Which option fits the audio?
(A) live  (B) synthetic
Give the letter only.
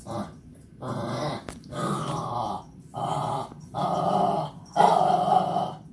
B